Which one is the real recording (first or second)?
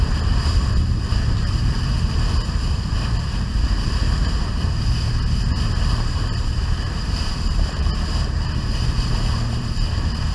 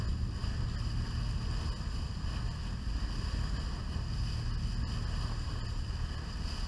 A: second